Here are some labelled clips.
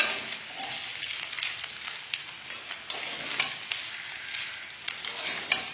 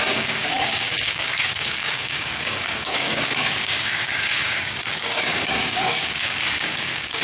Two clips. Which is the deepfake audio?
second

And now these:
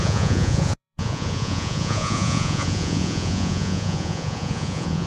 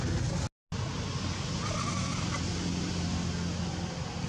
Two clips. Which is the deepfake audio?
first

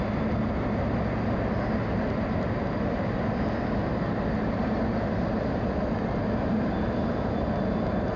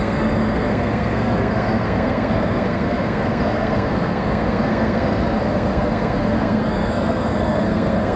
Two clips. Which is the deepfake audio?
second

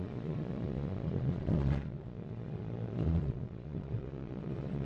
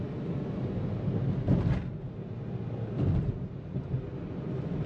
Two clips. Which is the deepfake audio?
first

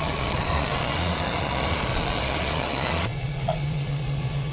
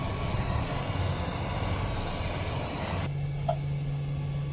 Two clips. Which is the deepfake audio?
first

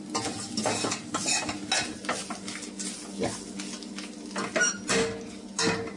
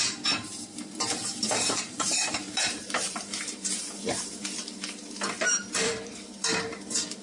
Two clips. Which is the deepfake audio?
second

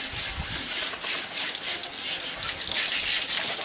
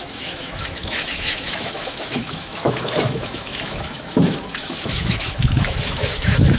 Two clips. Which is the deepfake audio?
second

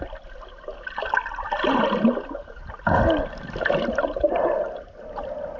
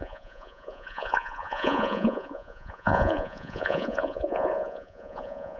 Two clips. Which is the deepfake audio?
second